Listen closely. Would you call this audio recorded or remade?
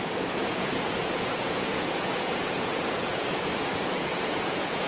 remade